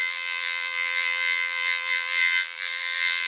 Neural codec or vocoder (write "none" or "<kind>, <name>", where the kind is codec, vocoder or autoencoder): vocoder, BigVGAN v2